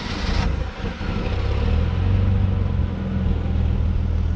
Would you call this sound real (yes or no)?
yes